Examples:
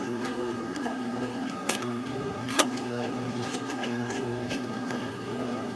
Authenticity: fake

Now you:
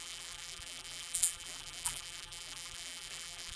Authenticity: fake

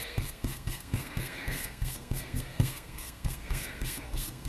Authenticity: fake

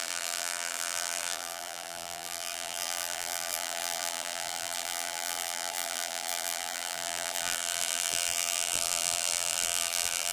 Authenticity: fake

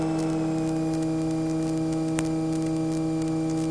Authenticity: real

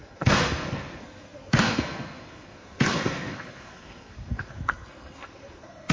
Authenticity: fake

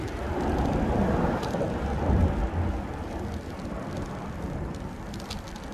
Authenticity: real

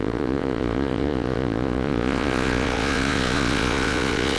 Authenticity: fake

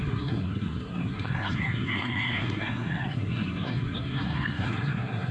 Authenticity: fake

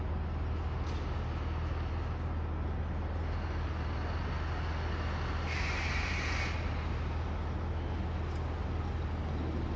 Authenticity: real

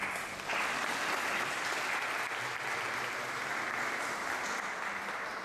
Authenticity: real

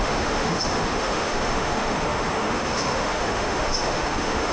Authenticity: fake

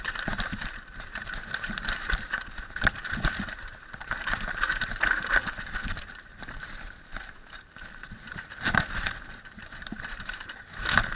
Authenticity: fake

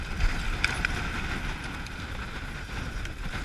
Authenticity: real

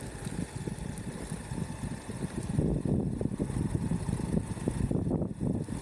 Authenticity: real